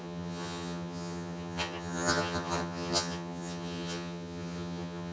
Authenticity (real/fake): fake